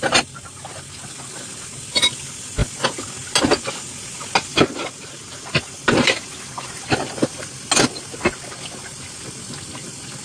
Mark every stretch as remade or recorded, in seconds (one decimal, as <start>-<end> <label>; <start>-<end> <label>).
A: 0.0-10.2 recorded